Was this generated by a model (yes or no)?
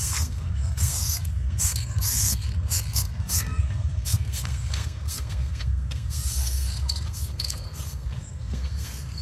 yes